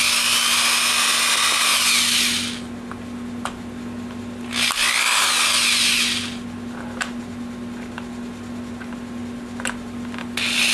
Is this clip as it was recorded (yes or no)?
yes